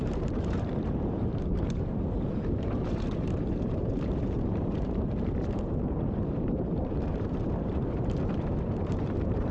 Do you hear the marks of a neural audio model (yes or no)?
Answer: yes